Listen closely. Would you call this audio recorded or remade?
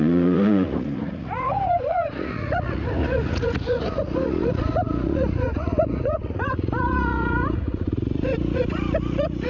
remade